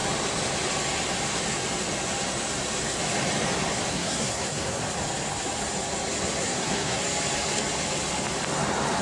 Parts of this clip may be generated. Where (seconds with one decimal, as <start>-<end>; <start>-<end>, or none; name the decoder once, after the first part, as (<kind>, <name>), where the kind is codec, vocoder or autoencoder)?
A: 3.9-4.8 (codec, SNAC); 6.4-7.0